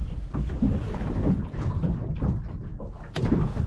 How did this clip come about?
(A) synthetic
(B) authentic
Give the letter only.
B